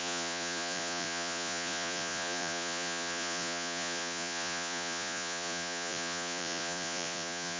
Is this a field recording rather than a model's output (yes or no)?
no